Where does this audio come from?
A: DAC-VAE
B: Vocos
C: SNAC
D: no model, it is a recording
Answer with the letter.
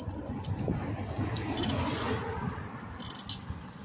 D